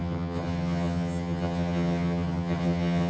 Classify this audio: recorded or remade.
remade